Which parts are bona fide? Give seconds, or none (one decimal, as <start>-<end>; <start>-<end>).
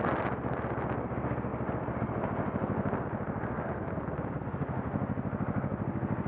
0.0-6.3